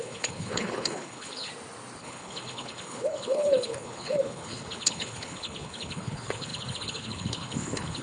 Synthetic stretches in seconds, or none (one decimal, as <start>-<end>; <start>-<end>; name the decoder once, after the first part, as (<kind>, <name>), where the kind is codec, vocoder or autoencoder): 0.0-1.5 (codec, HILCodec); 2.0-8.0